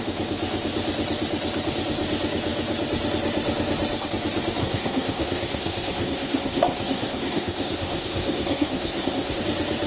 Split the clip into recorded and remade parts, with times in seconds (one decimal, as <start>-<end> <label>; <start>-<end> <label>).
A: 0.0-4.6 recorded; 4.6-9.4 remade; 9.4-9.9 recorded